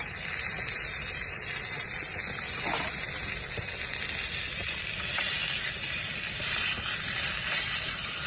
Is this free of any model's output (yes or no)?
yes